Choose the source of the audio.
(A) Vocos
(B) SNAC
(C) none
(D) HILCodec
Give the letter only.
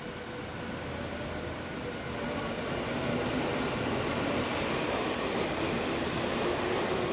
C